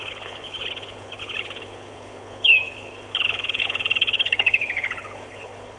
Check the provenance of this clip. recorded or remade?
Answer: remade